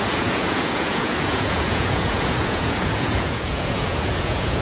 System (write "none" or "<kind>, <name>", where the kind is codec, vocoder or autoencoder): vocoder, Vocos